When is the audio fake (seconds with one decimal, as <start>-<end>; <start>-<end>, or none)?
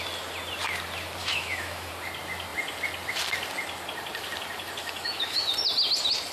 1.2-1.9; 4.8-5.5